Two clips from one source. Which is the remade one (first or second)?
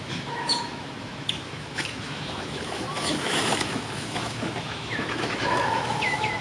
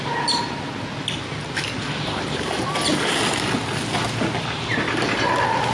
first